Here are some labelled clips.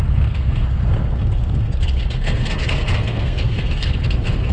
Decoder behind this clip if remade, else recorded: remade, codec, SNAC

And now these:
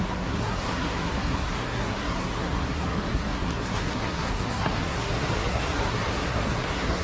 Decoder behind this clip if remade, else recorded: remade, codec, SNAC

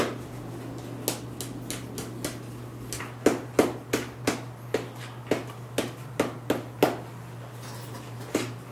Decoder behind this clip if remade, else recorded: recorded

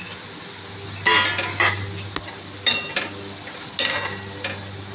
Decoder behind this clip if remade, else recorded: recorded